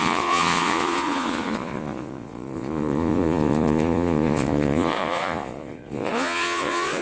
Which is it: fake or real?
fake